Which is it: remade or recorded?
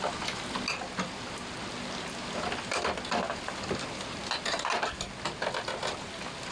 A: recorded